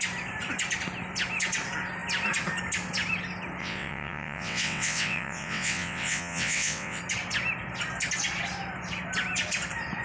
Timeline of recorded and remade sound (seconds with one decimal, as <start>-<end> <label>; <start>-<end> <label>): 0.0-3.6 recorded; 3.6-7.0 remade; 7.0-10.0 recorded